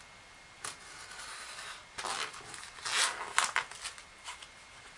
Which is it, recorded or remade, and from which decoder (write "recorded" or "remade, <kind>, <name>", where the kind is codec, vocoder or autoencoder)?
recorded